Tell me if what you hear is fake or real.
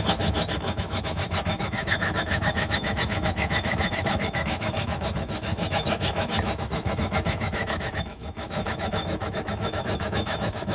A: fake